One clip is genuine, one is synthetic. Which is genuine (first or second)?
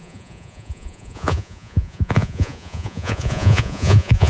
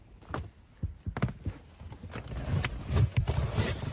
second